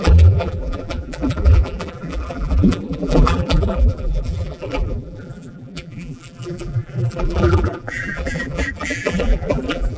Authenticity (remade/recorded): remade